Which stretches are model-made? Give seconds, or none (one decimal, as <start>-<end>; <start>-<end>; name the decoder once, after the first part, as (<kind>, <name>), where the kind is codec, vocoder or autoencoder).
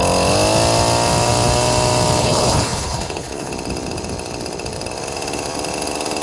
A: 2.2-3.5 (codec, HILCodec)